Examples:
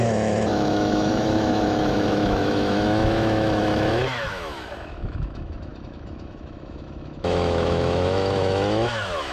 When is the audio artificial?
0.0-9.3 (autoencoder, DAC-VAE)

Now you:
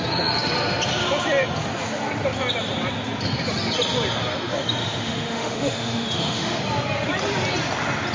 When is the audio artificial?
4.8-6.6 (autoencoder, DAC-VAE)

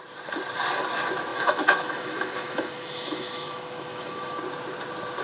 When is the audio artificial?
1.3-4.4 (autoencoder, DAC-VAE)